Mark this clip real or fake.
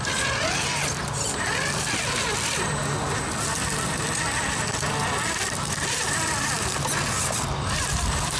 real